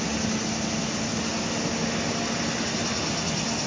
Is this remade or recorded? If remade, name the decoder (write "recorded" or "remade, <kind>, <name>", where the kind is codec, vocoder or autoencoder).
recorded